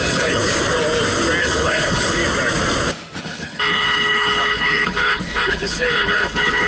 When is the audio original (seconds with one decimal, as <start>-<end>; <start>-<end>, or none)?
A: 0.4-1.4; 2.2-3.2